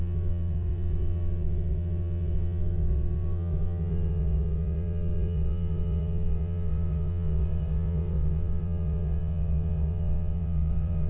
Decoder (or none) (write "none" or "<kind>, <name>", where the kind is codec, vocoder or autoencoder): vocoder, WaveNeXt